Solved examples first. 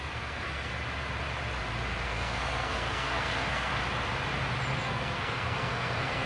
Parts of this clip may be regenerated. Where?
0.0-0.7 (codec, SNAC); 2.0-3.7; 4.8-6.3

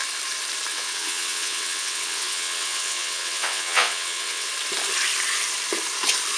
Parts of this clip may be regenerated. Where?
0.7-4.5 (vocoder, WaveNeXt)

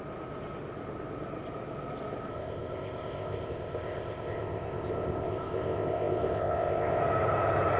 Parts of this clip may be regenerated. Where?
2.3-7.0 (codec, ZipCodec)

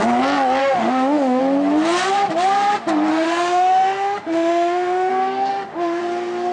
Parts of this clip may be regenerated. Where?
0.6-1.4 (autoencoder, DAC-VAE); 3.1-5.1; 5.5-6.0

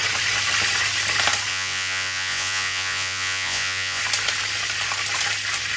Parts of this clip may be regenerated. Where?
1.5-4.0 (vocoder, Vocos)

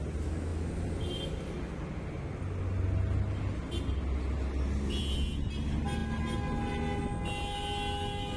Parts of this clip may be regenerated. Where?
none

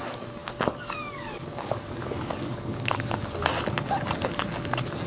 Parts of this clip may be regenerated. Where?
0.4-3.2 (codec, DAC)